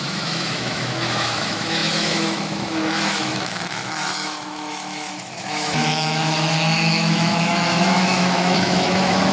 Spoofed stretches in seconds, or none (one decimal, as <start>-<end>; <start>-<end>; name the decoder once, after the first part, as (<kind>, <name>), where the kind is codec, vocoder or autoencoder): 0.0-9.3 (autoencoder, DAC-VAE)

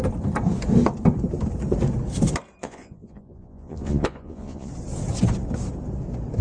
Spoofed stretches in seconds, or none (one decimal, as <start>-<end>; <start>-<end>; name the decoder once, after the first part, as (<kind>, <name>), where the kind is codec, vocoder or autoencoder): 2.6-4.7 (vocoder, Vocos)

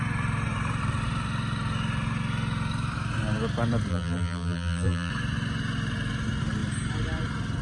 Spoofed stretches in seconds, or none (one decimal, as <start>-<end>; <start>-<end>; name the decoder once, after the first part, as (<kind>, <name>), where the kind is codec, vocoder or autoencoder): 3.9-5.1 (vocoder, BigVGAN v2)